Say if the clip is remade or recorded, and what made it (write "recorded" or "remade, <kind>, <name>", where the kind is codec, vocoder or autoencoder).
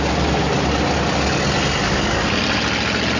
recorded